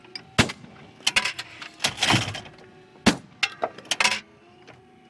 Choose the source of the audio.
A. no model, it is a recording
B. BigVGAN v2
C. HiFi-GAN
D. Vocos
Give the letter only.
A